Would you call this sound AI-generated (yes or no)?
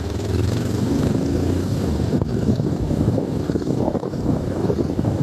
yes